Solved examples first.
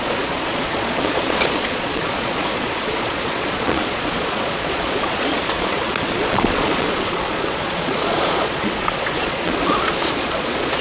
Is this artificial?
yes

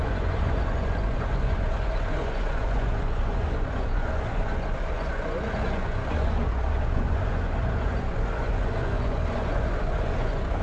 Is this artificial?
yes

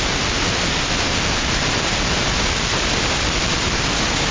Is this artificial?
no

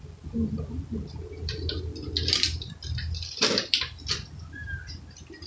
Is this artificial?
no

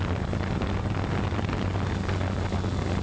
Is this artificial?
no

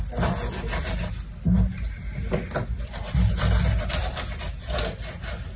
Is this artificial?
no